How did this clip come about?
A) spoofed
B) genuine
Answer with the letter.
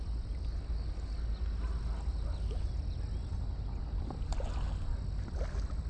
B